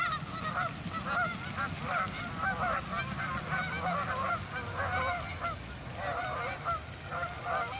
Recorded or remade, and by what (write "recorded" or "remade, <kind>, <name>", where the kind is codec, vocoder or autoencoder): recorded